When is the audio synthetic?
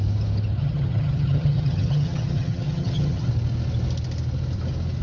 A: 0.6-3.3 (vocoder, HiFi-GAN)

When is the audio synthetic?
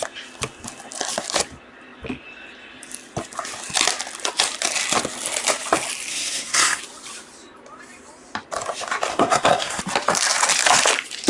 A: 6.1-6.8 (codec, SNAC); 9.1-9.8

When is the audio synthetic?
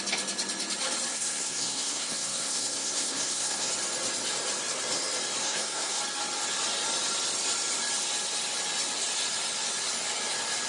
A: 1.1-3.7 (codec, SNAC); 5.4-6.0